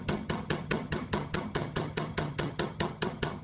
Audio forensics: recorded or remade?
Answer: remade